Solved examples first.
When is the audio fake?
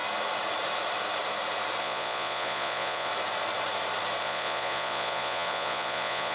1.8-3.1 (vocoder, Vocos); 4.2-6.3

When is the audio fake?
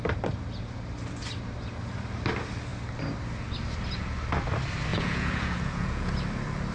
4.9-6.1 (vocoder, Vocos)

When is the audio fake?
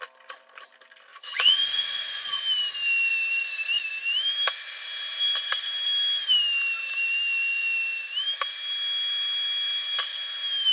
1.1-2.4 (vocoder, Vocos)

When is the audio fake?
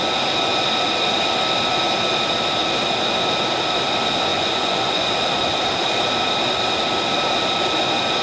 4.3-5.1 (vocoder, Vocos)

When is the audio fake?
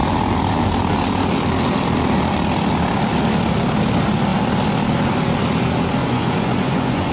6.0-7.1 (vocoder, Vocos)